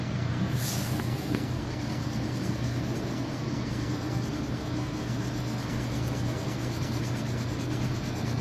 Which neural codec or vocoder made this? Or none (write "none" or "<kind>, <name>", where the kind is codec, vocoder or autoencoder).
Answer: codec, SNAC